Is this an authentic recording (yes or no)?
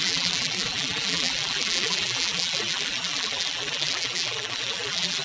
no